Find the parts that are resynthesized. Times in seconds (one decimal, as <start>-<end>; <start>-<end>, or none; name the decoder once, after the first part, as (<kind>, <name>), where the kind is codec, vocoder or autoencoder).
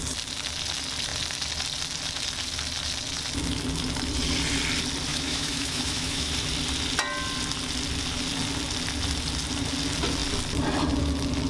5.1-6.3 (autoencoder, DAC-VAE)